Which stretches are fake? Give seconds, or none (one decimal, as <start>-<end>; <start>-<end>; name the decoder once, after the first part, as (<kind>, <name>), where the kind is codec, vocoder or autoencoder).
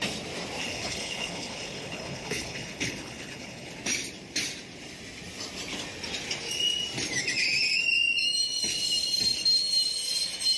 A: 0.6-3.7 (codec, HILCodec)